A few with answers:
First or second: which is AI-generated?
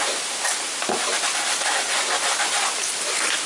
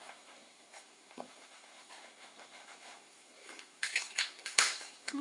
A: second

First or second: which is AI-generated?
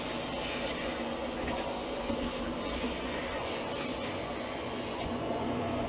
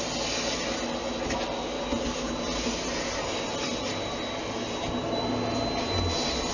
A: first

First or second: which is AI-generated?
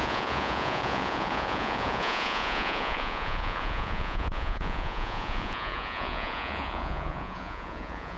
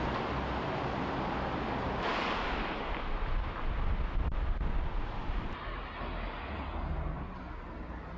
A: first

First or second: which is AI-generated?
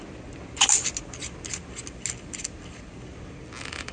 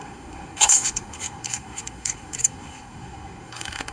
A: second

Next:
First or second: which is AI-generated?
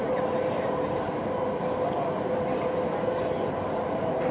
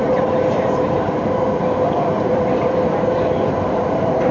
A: second